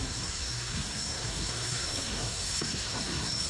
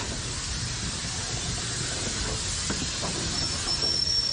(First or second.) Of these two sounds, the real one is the second